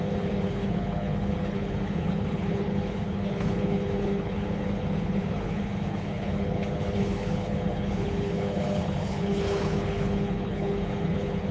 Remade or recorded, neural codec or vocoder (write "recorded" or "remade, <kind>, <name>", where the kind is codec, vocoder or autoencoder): remade, codec, HILCodec